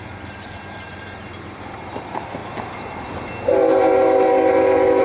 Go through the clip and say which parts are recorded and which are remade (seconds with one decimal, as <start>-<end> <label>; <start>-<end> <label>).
0.0-2.4 remade; 2.4-5.0 recorded